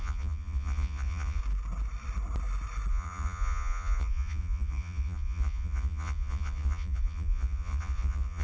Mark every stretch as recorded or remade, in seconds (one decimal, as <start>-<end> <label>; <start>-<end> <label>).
0.0-1.4 remade; 1.4-2.9 recorded; 2.9-8.4 remade